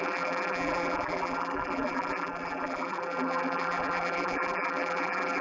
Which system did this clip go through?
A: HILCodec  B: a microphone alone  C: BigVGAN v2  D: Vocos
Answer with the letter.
C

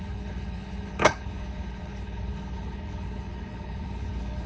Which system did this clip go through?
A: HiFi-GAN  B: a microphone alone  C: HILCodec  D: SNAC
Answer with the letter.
C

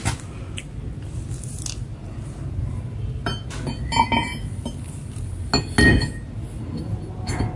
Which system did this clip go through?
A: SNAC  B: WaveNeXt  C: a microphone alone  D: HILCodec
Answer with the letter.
C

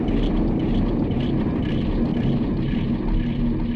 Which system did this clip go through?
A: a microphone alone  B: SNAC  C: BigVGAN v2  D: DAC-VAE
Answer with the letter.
A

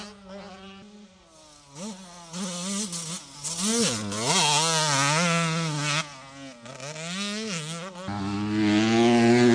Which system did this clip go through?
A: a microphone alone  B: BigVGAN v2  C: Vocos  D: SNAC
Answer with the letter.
A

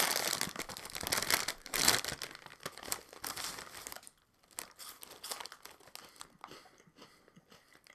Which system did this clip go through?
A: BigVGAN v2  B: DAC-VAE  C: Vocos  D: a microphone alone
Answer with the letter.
D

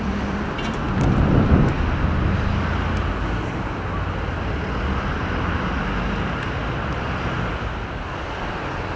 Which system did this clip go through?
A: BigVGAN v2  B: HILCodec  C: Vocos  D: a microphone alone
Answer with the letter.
D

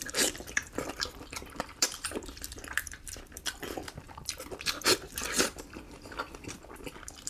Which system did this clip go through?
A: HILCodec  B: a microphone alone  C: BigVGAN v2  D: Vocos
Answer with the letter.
C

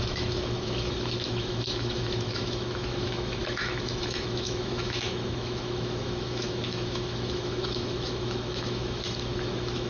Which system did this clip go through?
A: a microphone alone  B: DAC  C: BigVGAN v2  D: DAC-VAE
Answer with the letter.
D